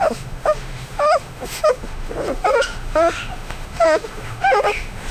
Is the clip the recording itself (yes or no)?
no